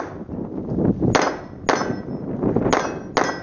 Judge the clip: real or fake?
real